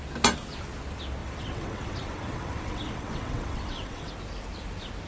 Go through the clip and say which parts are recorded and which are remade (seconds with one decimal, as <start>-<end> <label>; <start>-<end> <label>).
0.0-1.2 recorded; 1.2-4.1 remade; 4.1-5.1 recorded

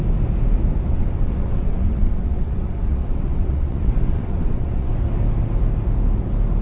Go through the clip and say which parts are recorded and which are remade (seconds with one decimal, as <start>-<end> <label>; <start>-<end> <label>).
0.0-0.9 recorded; 0.9-4.9 remade; 4.9-6.6 recorded

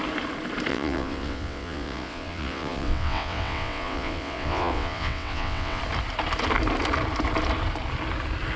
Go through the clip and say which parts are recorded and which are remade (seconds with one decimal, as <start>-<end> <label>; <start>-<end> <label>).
0.0-0.7 recorded; 0.7-5.8 remade; 5.8-8.6 recorded

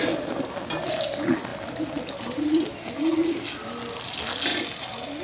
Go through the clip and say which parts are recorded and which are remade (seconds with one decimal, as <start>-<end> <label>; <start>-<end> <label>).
0.0-5.2 recorded

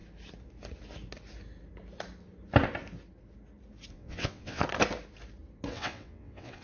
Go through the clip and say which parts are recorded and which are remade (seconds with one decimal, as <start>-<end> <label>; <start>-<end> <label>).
0.0-3.9 recorded; 3.9-4.6 remade; 4.6-5.7 recorded; 5.7-6.6 remade